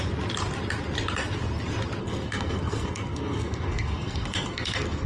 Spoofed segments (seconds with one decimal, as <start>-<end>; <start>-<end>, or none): 2.0-5.1